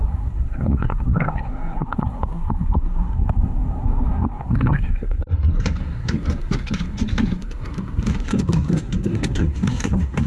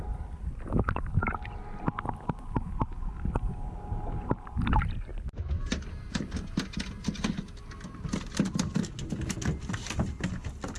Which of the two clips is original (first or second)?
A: second